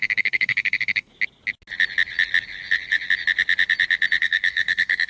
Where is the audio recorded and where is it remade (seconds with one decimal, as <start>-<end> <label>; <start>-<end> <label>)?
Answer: 0.0-1.1 remade; 1.1-4.2 recorded; 4.2-5.1 remade